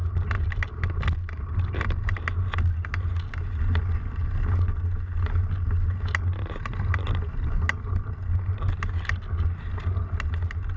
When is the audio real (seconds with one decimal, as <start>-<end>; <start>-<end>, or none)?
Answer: 0.0-10.8

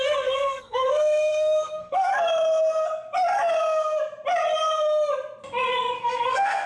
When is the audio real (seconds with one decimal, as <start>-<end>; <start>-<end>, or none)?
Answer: 2.1-6.0

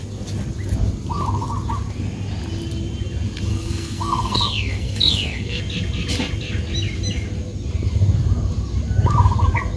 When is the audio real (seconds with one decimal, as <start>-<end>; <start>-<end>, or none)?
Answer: 0.0-3.5; 5.6-9.8

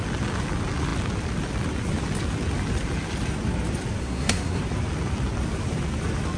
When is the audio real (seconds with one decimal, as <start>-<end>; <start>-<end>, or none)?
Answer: 0.0-4.0; 4.6-6.4

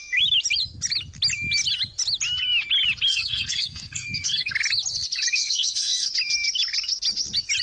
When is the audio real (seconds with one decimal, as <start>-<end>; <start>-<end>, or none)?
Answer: 0.0-3.1; 4.5-5.4; 6.1-7.6

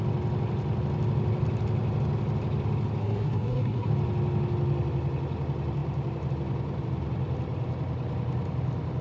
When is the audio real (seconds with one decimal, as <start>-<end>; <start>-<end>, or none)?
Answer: 0.0-3.0; 3.9-9.0

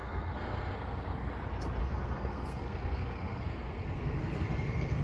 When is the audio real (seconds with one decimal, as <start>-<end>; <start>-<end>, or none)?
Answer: 1.3-1.8